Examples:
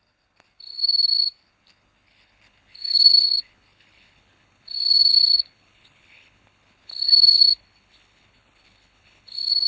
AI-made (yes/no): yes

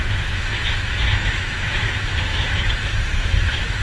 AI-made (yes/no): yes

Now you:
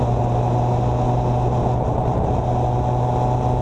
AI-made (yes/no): no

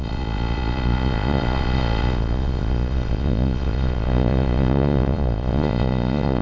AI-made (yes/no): yes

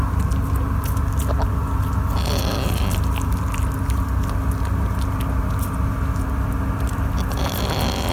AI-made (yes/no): no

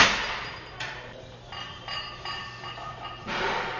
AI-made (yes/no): no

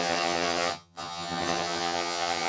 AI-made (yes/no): yes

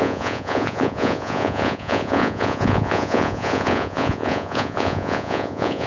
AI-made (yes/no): yes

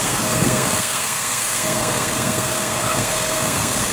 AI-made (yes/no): yes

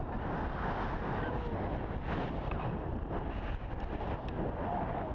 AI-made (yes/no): no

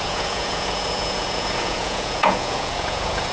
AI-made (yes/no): yes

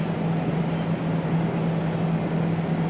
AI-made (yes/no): no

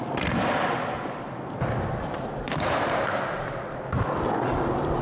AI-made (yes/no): no